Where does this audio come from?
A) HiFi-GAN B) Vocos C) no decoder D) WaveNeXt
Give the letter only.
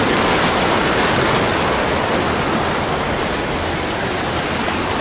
C